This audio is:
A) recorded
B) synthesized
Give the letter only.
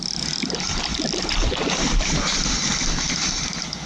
A